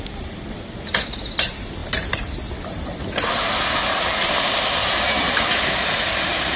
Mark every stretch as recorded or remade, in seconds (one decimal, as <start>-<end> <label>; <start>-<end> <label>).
0.0-6.6 recorded